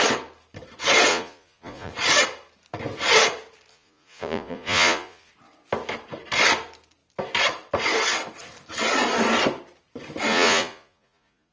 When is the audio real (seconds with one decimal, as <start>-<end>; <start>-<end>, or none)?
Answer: 0.0-1.1; 1.9-3.7; 5.3-10.3